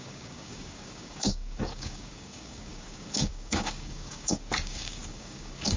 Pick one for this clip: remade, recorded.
remade